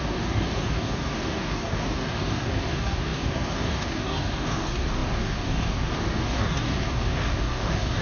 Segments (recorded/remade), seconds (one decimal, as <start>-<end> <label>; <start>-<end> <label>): 0.0-8.0 remade